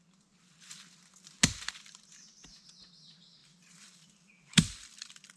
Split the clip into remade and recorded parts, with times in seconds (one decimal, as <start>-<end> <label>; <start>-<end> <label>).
0.0-3.4 recorded; 3.4-5.4 remade